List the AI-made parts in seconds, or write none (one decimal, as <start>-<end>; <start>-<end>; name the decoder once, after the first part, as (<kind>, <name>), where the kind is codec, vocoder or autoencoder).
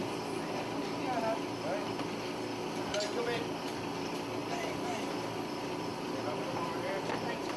none